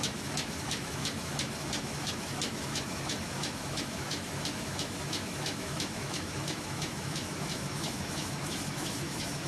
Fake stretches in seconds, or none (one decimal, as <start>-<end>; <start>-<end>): 0.0-9.5